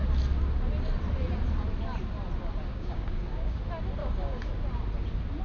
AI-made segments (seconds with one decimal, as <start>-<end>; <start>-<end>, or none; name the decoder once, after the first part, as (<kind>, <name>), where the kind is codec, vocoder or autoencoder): 2.7-3.6 (codec, DAC); 4.0-4.5

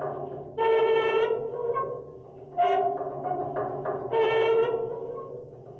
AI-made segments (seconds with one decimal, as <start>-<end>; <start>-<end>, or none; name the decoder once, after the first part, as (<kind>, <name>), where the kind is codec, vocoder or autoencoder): none